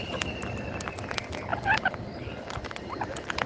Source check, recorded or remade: recorded